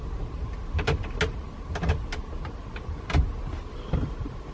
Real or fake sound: real